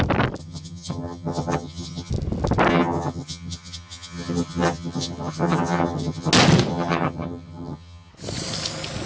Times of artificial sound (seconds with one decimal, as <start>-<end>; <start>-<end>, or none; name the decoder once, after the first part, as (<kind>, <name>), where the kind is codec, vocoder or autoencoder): 0.4-2.1 (vocoder, HiFi-GAN); 2.7-6.3; 6.7-8.1